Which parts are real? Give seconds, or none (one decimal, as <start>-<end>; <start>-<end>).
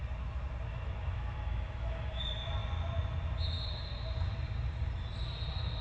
0.0-0.7; 2.2-5.8